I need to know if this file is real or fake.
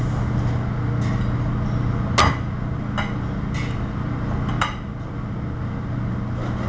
real